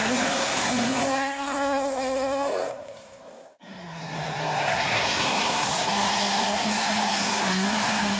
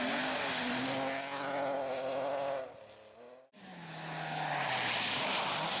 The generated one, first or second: first